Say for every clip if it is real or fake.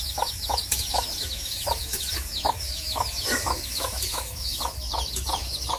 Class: fake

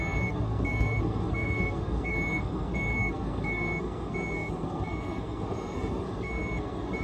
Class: fake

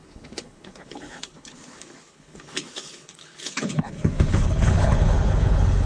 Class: fake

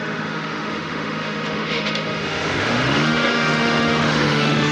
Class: fake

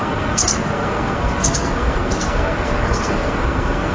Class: fake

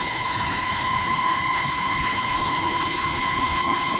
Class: fake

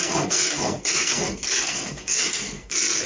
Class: fake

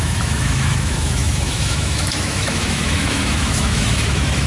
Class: fake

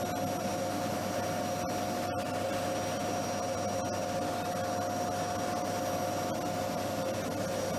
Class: real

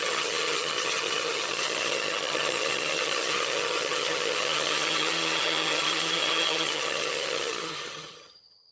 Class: fake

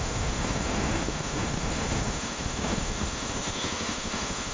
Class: fake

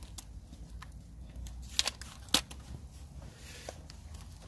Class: real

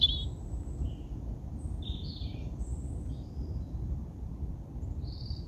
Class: real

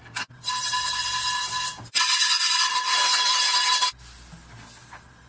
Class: real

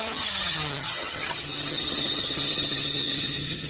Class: fake